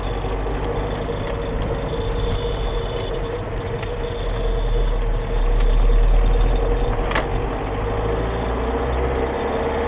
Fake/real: real